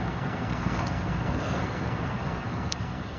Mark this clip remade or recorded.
remade